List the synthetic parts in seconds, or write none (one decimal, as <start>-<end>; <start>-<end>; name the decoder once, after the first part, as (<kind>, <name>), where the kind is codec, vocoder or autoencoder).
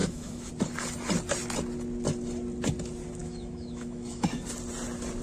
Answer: 0.0-0.5 (autoencoder, DAC-VAE); 3.2-4.4